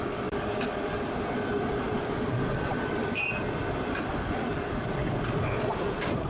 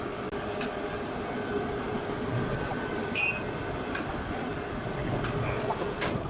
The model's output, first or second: first